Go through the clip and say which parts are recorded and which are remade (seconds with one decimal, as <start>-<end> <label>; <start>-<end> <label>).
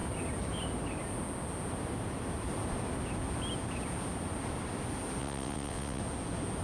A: 0.0-5.2 recorded; 5.2-6.0 remade; 6.0-6.6 recorded